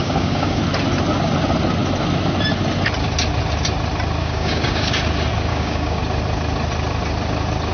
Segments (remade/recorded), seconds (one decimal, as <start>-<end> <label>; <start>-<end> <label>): 0.0-0.6 remade; 0.6-4.2 recorded; 4.2-4.9 remade; 4.9-5.5 recorded; 5.5-6.0 remade; 6.0-7.7 recorded